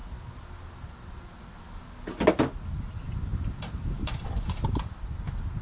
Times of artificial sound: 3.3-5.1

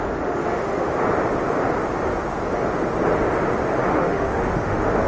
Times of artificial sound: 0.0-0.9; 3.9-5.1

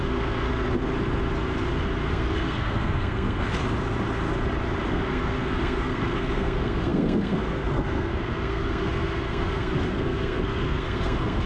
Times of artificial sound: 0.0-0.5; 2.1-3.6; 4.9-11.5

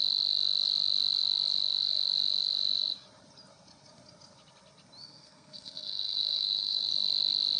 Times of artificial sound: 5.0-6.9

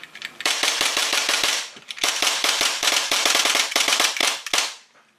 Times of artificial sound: 0.0-4.2

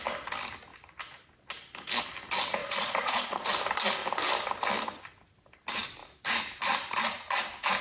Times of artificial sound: 2.6-3.5

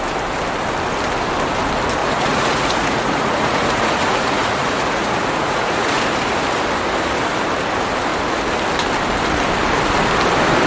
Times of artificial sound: 2.0-6.0